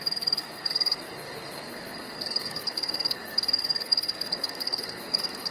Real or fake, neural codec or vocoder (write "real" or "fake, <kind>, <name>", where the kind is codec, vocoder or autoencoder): fake, codec, SNAC